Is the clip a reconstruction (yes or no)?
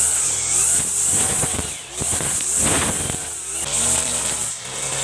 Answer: no